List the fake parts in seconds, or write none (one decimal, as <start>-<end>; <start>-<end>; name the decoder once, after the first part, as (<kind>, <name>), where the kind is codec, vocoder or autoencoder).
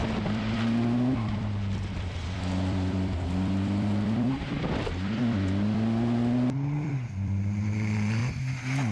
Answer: 0.0-8.2 (vocoder, BigVGAN v2)